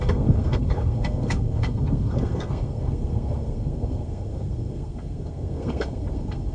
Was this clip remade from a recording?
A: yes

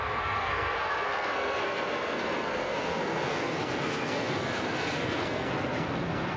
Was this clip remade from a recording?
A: yes